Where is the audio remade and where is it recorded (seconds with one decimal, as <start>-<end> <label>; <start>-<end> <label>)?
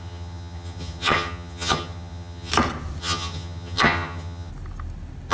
0.0-2.5 remade; 2.5-3.0 recorded; 3.0-4.5 remade; 4.5-5.3 recorded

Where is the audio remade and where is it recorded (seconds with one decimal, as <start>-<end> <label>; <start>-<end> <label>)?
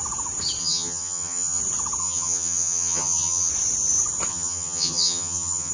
0.0-0.6 recorded; 0.6-1.6 remade; 1.6-2.0 recorded; 2.0-3.5 remade; 3.5-4.3 recorded; 4.3-5.7 remade